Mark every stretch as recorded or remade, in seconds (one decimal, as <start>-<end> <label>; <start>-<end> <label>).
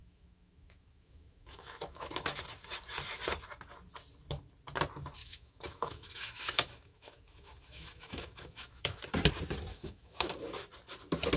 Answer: 0.0-2.4 remade; 2.4-5.2 recorded; 5.2-9.0 remade; 9.0-9.7 recorded; 9.7-10.3 remade; 10.3-11.4 recorded